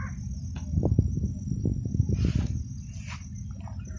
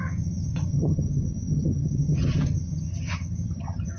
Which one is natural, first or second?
first